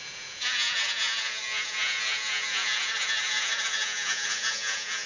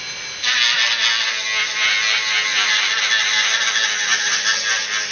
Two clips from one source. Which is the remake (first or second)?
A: first